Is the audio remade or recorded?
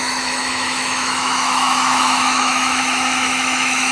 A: remade